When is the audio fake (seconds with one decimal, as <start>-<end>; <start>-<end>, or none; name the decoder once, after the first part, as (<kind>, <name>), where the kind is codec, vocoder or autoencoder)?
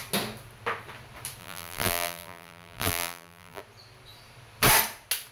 1.4-3.6 (vocoder, BigVGAN v2)